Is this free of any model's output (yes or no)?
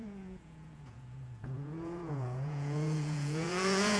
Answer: no